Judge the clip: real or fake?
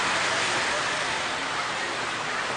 real